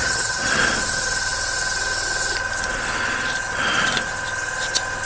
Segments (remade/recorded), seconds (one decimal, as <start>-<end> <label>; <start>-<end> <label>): 0.0-0.6 remade; 0.6-5.1 recorded